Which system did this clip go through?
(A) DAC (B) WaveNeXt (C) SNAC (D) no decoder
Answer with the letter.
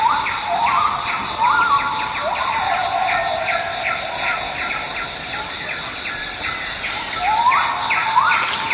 D